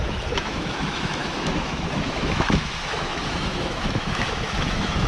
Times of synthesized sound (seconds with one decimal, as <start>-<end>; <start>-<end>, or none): 0.0-5.1